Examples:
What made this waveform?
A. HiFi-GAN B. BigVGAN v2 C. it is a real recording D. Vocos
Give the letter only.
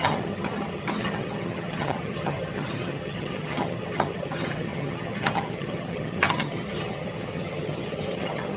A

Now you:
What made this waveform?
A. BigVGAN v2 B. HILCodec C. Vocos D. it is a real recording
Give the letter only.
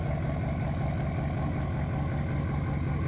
D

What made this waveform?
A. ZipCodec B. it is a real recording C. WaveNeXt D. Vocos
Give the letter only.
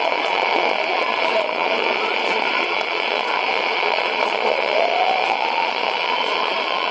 D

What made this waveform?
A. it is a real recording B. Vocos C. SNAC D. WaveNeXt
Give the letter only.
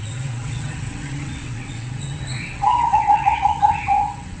D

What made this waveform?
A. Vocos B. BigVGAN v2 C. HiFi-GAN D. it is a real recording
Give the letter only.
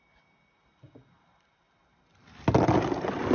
D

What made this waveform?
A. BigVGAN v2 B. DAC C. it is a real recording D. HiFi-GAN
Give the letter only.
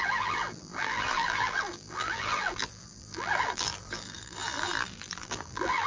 A